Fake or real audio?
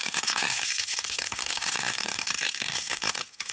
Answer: fake